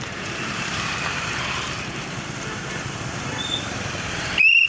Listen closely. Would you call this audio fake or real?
fake